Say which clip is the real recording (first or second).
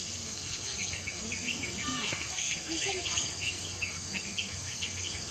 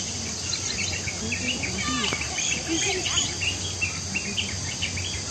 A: second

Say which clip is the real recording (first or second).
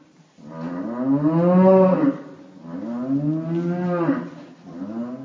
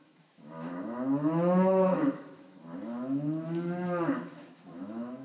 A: first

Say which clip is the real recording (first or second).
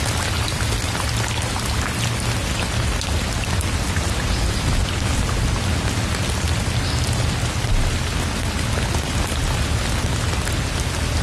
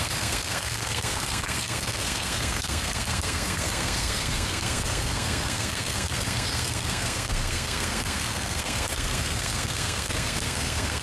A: first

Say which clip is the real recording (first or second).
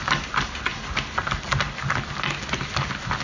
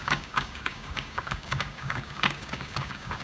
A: first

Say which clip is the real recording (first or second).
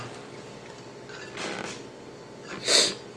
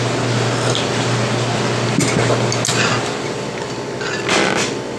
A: second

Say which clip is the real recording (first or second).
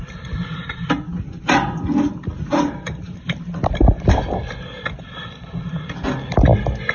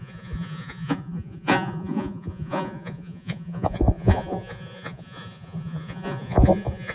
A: first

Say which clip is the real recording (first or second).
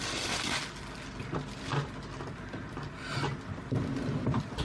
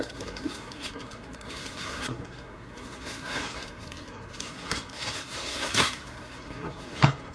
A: first